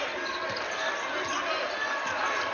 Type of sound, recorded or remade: recorded